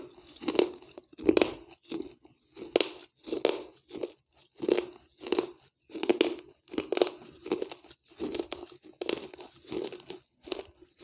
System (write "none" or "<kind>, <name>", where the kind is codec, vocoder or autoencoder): none